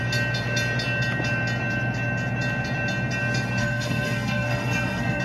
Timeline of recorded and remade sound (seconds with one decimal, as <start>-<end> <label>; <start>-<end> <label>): 0.0-3.6 recorded; 3.6-5.2 remade